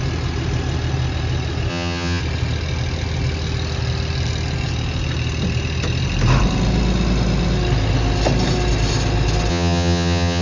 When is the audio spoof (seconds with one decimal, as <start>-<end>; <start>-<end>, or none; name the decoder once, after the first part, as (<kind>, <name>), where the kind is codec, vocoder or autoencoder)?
1.7-2.2 (vocoder, HiFi-GAN); 9.5-10.4